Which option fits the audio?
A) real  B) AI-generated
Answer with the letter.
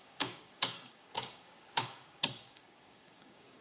B